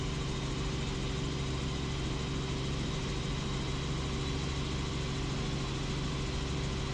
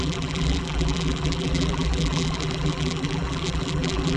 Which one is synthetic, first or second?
second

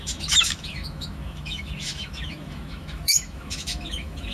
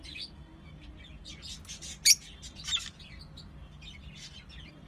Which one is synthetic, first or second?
first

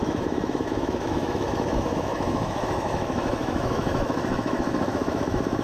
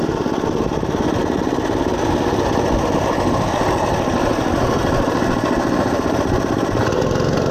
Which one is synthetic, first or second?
first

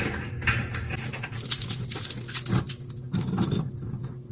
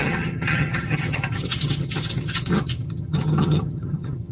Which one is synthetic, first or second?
second